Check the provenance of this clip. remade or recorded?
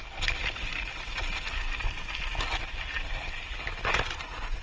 recorded